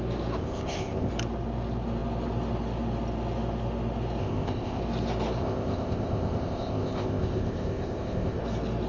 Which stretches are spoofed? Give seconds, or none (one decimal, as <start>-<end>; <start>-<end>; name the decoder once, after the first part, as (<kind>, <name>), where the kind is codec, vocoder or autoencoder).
0.4-1.1 (codec, ZipCodec); 4.2-4.8; 5.4-8.4